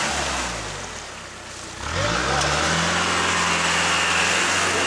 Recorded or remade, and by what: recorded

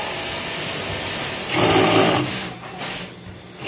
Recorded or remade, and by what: recorded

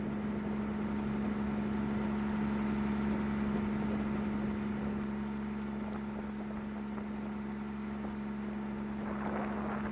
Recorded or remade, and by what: recorded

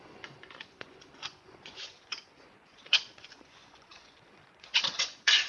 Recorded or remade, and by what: remade, vocoder, Vocos